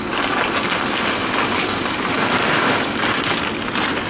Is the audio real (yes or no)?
no